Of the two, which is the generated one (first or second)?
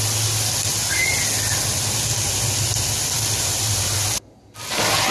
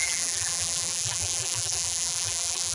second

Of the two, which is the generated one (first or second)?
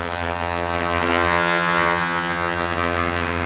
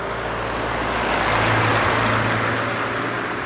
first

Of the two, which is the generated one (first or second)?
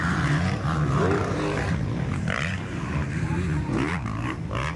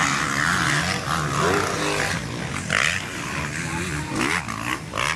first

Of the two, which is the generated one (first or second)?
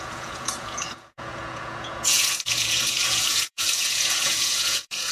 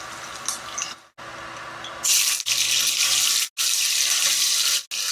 first